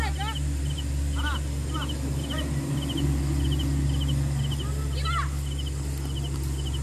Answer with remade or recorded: recorded